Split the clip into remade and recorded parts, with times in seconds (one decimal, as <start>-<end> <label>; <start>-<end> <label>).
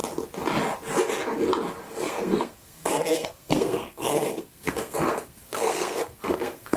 0.0-1.9 recorded; 1.9-6.8 remade